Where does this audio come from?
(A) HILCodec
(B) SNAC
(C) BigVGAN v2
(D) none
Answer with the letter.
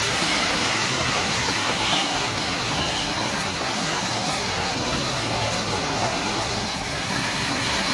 B